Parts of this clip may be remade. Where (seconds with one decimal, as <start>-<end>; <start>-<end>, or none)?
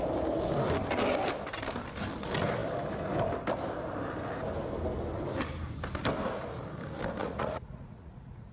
7.2-8.5